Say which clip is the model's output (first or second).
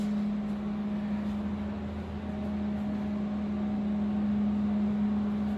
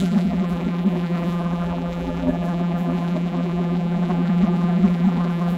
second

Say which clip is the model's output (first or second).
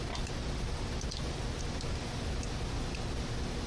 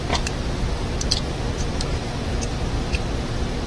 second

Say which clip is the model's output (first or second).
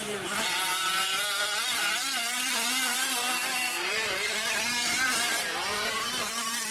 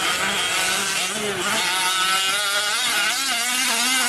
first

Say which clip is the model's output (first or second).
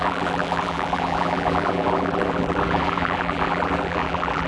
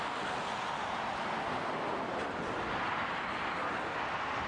first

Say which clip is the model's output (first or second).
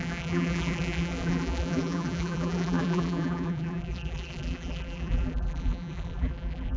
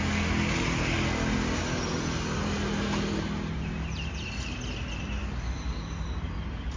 first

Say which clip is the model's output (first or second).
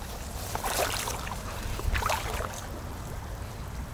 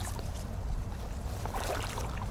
first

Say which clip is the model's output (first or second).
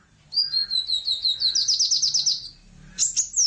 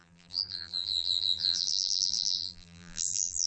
second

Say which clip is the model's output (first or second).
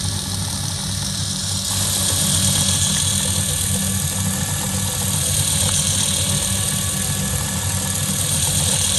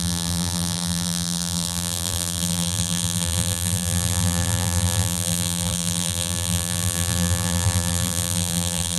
second